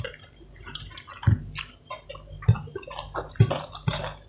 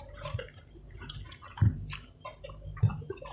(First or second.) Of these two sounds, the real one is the first